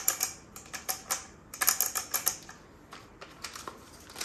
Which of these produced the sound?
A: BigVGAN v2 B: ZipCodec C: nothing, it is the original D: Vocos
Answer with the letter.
C